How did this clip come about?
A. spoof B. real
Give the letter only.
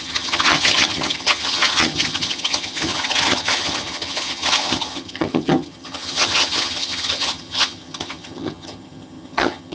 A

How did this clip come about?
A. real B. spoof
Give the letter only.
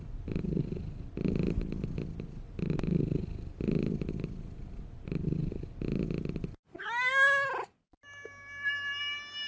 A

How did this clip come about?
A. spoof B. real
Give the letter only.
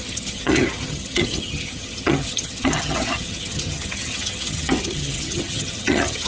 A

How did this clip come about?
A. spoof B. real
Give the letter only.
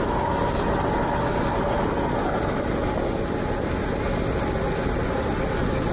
B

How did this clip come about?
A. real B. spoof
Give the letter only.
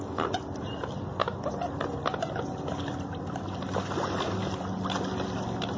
A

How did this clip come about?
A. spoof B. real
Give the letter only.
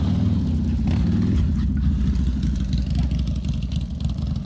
B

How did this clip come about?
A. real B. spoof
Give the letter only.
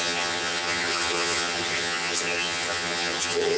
B